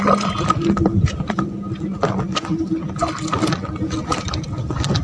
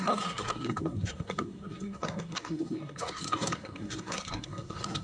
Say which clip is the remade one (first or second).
second